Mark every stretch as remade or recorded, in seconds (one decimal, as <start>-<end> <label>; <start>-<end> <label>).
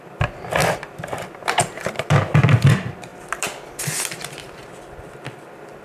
0.0-5.8 recorded